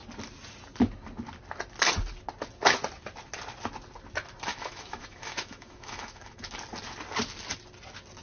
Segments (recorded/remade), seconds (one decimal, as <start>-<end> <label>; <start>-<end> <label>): 0.0-4.5 recorded; 4.5-6.5 remade; 6.5-8.2 recorded